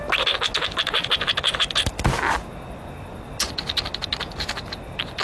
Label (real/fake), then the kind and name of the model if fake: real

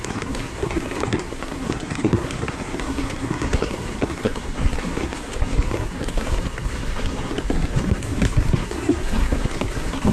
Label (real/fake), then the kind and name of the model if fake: fake, codec, SNAC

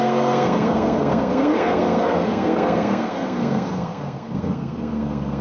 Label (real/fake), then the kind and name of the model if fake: fake, codec, SNAC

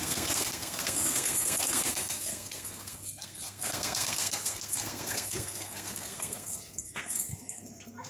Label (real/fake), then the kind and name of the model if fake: fake, codec, SNAC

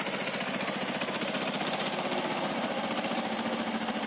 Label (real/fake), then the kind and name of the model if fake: real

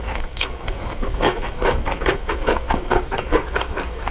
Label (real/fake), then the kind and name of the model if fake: fake, codec, SNAC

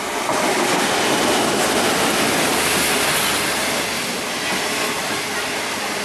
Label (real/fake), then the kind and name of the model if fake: real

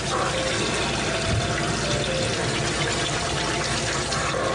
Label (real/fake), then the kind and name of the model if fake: real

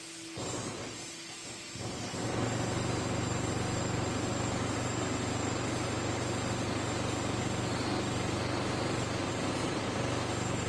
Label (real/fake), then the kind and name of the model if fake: real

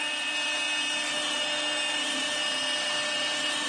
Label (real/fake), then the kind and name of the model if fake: real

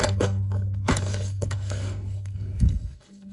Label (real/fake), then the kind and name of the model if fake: fake, codec, SNAC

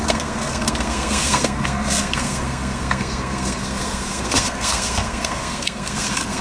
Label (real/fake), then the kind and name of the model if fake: fake, codec, SNAC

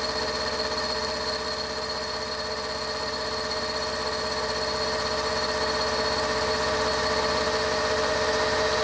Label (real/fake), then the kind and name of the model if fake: real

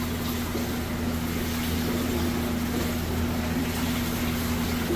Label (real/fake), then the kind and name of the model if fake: real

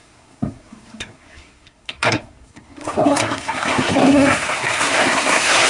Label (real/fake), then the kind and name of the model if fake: fake, codec, SNAC